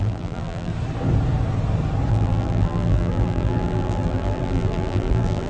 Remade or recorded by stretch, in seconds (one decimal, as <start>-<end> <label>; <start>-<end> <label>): 0.0-0.7 remade; 0.7-2.1 recorded; 2.1-5.5 remade